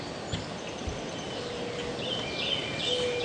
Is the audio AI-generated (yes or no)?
no